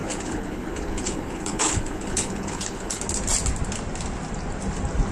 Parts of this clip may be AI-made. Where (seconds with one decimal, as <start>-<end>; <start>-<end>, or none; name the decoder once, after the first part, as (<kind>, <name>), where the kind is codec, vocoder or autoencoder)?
0.0-3.0 (codec, HILCodec)

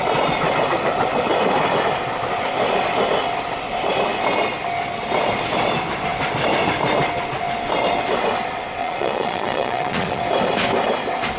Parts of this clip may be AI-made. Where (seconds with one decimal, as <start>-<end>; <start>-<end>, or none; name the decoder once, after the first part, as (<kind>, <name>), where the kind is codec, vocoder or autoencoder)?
8.8-10.2 (vocoder, Vocos)

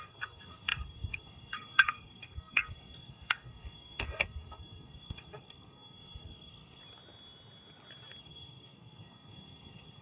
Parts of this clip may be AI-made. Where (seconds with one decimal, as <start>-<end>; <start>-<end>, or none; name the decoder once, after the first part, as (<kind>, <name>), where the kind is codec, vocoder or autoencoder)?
0.0-6.8 (codec, SNAC); 8.2-10.0

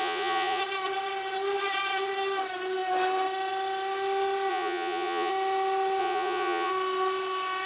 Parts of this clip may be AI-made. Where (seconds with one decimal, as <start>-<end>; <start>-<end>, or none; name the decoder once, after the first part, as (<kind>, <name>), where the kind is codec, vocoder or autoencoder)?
0.0-0.6 (vocoder, Vocos); 4.5-5.3; 6.0-6.7

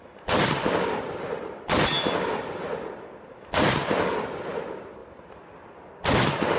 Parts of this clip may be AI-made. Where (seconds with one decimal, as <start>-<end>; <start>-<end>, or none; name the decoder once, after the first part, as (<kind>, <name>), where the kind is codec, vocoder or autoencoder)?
none